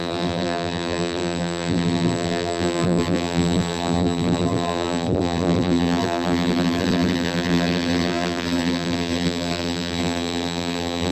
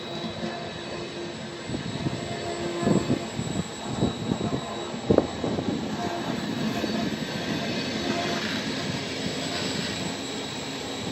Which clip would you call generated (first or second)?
first